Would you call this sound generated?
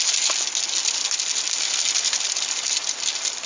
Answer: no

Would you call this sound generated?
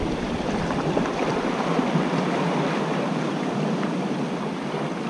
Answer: yes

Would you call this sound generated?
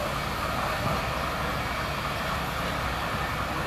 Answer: no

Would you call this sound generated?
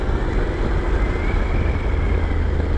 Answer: no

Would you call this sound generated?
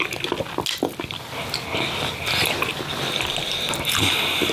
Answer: no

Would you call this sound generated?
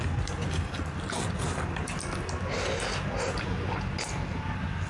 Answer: no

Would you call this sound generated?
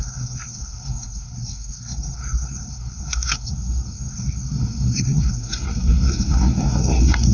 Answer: yes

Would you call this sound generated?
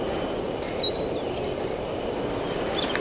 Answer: no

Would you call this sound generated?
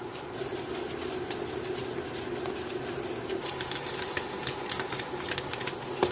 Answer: no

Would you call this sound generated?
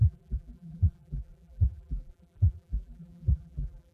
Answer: yes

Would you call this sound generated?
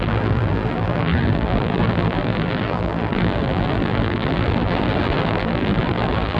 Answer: yes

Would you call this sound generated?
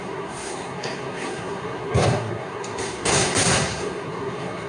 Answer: yes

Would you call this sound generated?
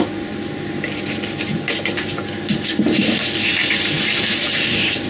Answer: no